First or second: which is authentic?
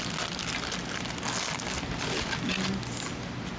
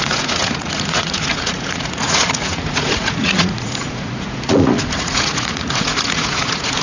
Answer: first